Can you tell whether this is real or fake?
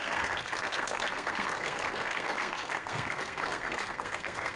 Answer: fake